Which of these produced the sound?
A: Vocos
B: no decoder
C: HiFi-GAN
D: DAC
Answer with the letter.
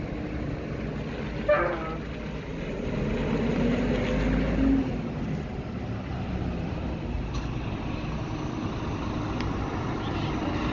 B